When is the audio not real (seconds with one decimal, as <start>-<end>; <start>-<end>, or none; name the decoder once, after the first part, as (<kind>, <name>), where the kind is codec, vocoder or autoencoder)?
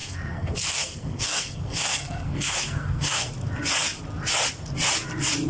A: 0.0-3.3 (codec, SNAC)